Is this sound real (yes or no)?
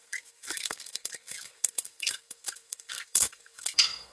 no